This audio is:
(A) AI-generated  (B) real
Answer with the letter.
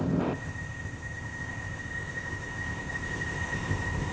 A